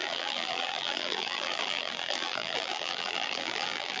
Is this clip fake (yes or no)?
yes